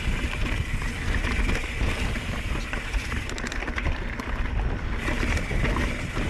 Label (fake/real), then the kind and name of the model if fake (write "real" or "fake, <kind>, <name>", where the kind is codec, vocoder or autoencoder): real